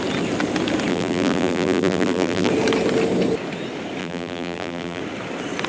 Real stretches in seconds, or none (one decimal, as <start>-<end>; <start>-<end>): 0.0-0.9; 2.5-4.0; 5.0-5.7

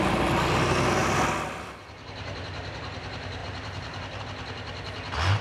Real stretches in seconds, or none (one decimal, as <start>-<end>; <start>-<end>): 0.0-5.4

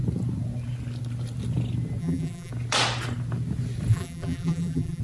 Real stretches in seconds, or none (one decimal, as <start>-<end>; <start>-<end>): 0.0-2.0; 2.5-3.9